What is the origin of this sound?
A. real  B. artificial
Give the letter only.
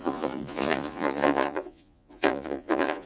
B